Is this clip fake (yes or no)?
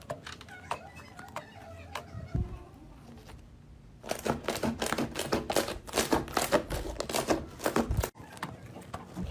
no